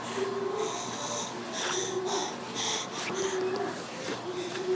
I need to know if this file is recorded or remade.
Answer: recorded